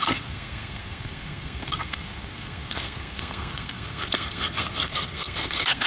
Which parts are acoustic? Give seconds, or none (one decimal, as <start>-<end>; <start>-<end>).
none